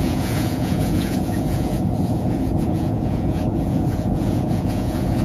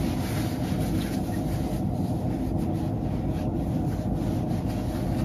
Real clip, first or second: second